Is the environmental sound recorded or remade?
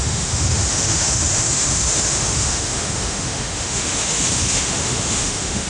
remade